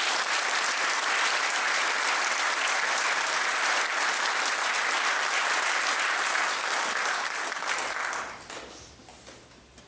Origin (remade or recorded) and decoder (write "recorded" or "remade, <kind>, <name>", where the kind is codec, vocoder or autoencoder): recorded